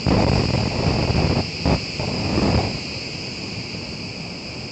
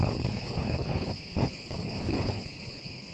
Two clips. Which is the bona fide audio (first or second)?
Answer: first